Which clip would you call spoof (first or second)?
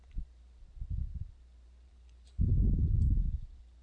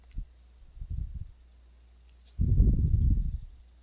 first